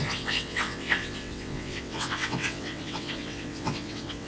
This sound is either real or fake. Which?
fake